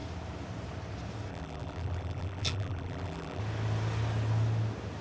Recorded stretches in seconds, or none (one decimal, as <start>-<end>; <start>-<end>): 0.0-1.3; 3.4-5.0